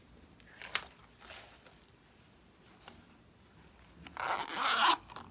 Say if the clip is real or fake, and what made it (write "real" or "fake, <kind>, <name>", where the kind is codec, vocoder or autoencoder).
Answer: real